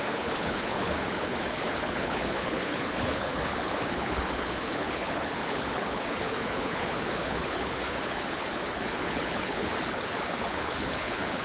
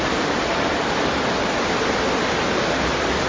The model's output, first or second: first